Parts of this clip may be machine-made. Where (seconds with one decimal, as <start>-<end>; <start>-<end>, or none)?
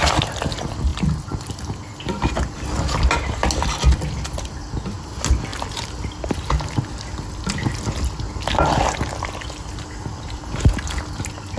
none